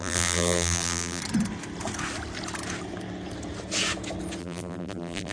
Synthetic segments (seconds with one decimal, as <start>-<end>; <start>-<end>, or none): 0.0-1.2; 4.4-5.3